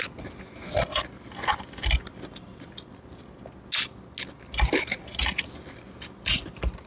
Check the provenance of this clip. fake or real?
real